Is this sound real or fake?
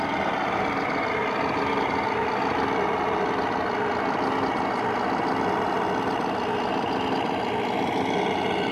real